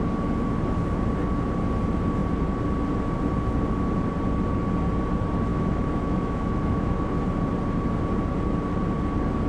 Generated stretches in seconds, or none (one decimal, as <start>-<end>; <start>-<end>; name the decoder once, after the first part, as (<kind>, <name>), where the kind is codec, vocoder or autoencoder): 5.5-7.1 (autoencoder, DAC-VAE)